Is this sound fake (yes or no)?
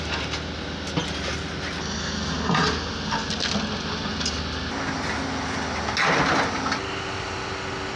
no